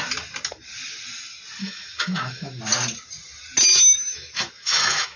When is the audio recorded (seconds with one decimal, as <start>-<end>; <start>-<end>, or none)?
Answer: 0.0-1.6; 2.6-4.1